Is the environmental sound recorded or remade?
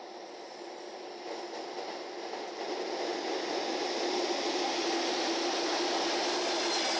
recorded